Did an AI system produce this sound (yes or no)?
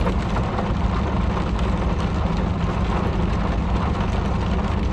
no